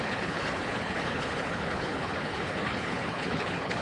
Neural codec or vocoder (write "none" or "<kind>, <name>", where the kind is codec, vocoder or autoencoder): codec, HILCodec